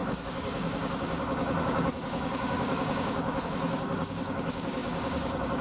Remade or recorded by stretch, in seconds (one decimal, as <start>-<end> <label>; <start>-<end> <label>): 0.0-5.6 remade

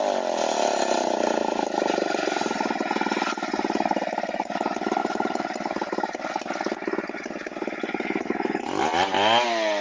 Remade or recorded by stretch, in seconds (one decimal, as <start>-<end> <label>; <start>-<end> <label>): 0.0-9.8 recorded

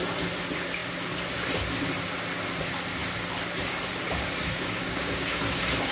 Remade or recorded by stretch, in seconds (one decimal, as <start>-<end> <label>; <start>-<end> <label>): 0.0-4.4 recorded; 4.4-5.4 remade; 5.4-5.9 recorded

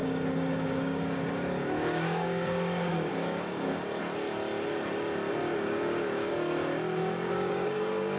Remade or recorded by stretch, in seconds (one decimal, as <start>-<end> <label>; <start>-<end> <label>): 0.0-4.0 remade; 4.0-5.4 recorded; 5.4-8.2 remade

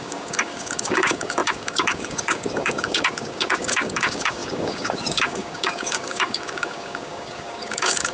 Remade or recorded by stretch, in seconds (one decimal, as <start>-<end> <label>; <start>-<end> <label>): 0.0-8.1 remade